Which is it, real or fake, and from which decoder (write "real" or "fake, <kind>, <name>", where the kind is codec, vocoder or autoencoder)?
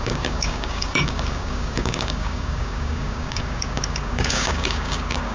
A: fake, codec, DAC